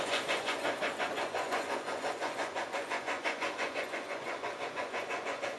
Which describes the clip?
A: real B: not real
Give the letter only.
B